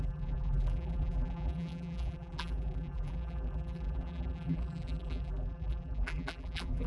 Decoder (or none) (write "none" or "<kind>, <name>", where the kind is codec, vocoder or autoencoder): vocoder, BigVGAN v2